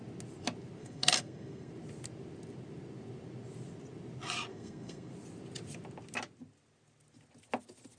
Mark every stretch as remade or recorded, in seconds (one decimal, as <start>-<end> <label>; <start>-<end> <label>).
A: 0.0-0.8 recorded; 0.8-1.7 remade; 1.7-4.5 recorded; 4.5-5.1 remade; 5.1-8.0 recorded